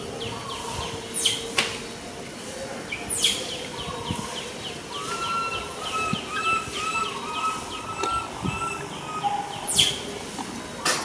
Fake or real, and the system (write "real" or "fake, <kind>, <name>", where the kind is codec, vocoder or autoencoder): real